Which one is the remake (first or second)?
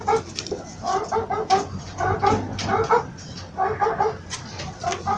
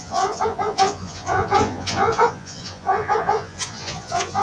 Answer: second